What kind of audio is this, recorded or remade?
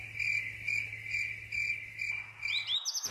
recorded